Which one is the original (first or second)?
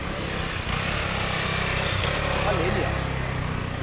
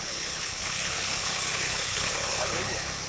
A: first